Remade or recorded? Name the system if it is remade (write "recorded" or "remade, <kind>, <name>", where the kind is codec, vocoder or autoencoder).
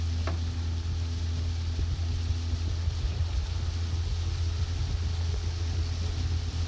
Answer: recorded